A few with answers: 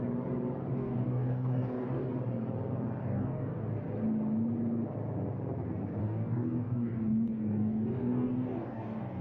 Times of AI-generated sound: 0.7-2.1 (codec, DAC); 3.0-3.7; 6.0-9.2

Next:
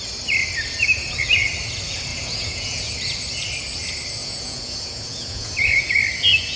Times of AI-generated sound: 2.1-2.9 (vocoder, Vocos); 4.2-5.9